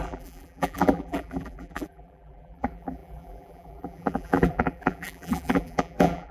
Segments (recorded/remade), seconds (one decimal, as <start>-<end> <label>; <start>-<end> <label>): 0.0-6.3 remade